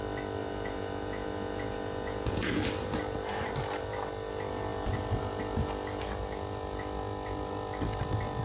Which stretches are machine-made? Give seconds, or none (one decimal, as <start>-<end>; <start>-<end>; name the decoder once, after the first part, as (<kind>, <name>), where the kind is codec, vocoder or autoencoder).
0.4-2.6 (vocoder, Vocos)